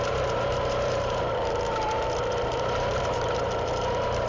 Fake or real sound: fake